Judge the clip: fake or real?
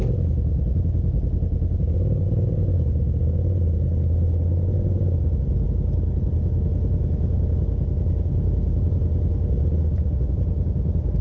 real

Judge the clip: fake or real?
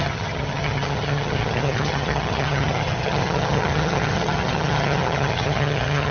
fake